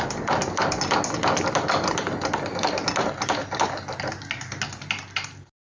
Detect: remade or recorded recorded